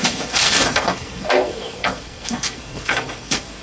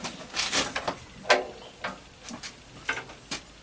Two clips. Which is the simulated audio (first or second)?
first